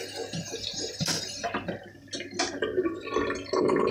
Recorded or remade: recorded